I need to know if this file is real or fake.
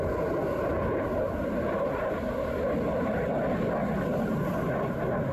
real